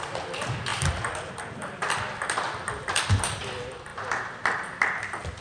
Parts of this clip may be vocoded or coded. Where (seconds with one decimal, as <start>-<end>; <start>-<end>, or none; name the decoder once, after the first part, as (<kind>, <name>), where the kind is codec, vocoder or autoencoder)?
none